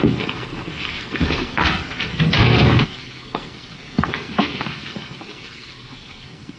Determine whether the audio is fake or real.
fake